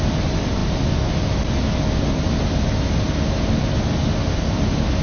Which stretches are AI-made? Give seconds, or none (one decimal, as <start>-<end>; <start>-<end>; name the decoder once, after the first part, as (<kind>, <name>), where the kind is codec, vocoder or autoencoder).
none